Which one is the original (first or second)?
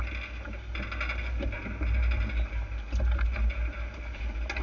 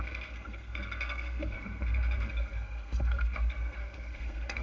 first